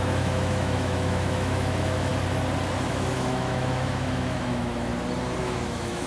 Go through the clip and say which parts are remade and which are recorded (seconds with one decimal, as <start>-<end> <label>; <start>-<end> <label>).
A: 0.0-2.1 remade; 2.1-2.9 recorded; 2.9-4.9 remade; 4.9-5.4 recorded; 5.4-6.1 remade